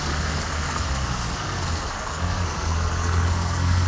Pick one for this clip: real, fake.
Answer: fake